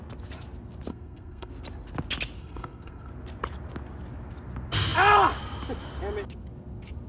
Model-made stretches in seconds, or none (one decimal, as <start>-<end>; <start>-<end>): 0.9-1.5; 2.4-3.1

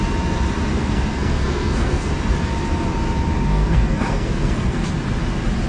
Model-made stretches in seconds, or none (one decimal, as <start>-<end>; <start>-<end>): 0.7-2.1; 3.5-4.9